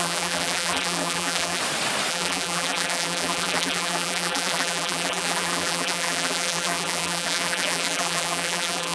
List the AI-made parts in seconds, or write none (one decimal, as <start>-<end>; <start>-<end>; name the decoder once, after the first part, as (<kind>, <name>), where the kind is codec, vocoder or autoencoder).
0.0-1.6 (vocoder, BigVGAN v2); 2.1-8.9